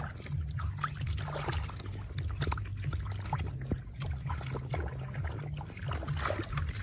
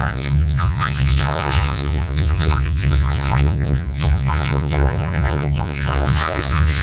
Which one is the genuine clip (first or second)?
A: first